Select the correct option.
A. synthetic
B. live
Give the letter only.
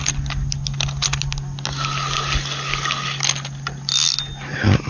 B